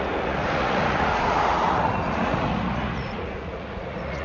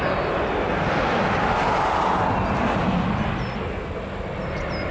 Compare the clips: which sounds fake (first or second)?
first